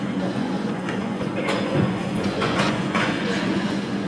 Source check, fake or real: fake